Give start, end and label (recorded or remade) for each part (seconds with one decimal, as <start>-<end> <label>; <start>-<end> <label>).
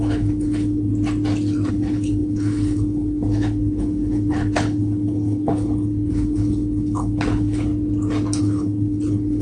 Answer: 0.0-0.9 remade; 0.9-1.7 recorded; 1.7-7.7 remade; 7.7-8.4 recorded; 8.4-9.4 remade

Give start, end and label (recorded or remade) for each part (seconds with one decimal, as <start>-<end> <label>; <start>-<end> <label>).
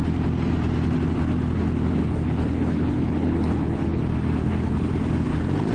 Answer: 0.0-2.0 recorded; 2.0-4.0 remade; 4.0-4.4 recorded; 4.4-4.9 remade; 4.9-5.7 recorded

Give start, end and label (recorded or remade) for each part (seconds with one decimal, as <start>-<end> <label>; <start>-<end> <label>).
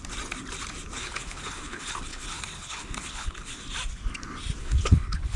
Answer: 0.0-1.0 recorded; 1.0-3.6 remade; 3.6-4.6 recorded; 4.6-5.4 remade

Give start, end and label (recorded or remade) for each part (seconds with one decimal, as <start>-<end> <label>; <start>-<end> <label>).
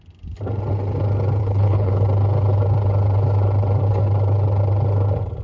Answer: 0.0-1.4 recorded; 1.4-1.9 remade; 1.9-5.4 recorded